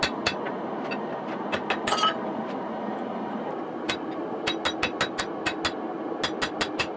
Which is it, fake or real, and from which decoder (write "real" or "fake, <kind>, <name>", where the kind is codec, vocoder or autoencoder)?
real